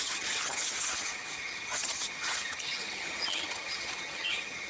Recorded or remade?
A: remade